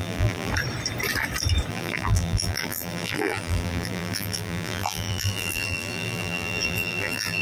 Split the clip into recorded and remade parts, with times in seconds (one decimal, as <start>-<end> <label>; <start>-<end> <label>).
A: 0.0-0.5 remade; 0.5-1.7 recorded; 1.7-7.4 remade